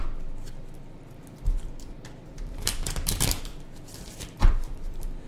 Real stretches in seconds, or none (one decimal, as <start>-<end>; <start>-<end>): 0.0-2.4; 3.5-4.4

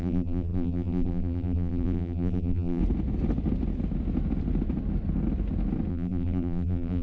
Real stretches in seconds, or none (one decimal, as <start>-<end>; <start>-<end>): 2.8-5.9

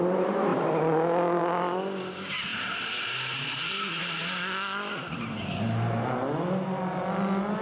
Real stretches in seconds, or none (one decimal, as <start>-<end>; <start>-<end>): 0.0-2.5; 5.3-7.6

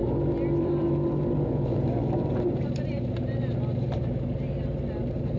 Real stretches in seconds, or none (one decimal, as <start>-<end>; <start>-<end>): 0.0-0.6

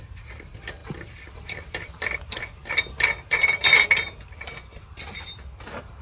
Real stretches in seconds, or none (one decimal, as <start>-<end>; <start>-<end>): none

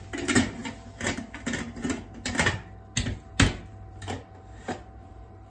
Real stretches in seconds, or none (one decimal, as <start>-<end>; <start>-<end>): 0.6-3.9

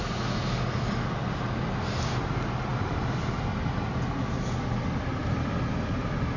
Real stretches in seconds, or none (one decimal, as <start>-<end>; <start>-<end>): 0.0-2.7; 3.9-5.2